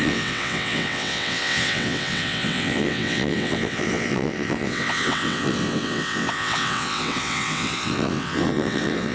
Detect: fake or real fake